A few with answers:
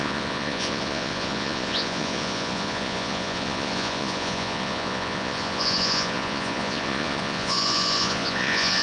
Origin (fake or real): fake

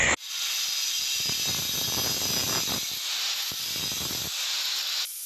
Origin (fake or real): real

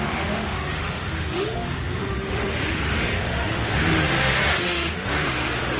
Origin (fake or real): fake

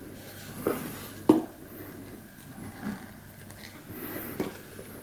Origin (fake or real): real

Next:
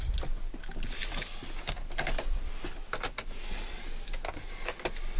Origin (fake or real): real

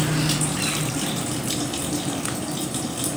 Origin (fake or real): real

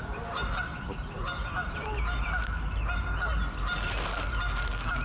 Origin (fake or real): real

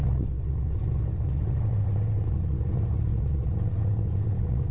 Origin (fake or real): fake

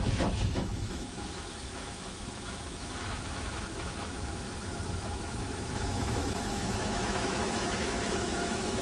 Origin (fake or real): fake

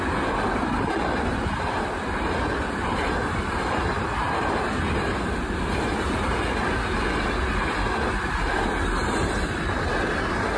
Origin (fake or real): real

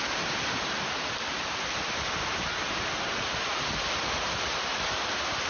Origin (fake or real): real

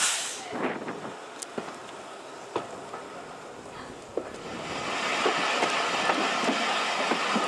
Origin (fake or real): real